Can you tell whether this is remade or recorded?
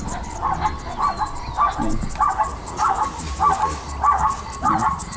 recorded